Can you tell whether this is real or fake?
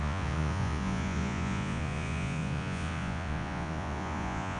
fake